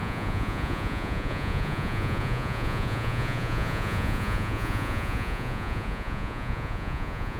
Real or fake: fake